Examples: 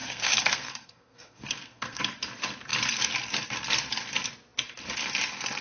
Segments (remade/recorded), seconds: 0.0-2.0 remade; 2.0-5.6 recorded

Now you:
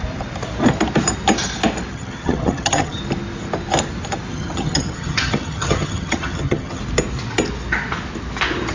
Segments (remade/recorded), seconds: 0.0-1.9 recorded; 1.9-3.0 remade; 3.0-4.3 recorded; 4.3-6.8 remade; 6.8-8.7 recorded

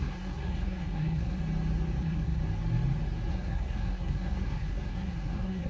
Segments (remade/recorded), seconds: 0.0-1.4 remade; 1.4-2.0 recorded; 2.0-2.4 remade; 2.4-3.3 recorded; 3.3-5.7 remade

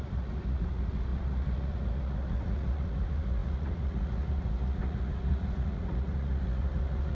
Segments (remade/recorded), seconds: 0.0-7.1 remade

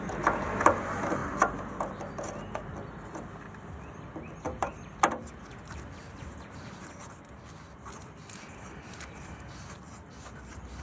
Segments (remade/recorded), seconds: 0.0-4.6 recorded; 4.6-5.2 remade; 5.2-10.8 recorded